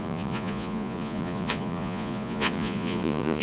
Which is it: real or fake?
fake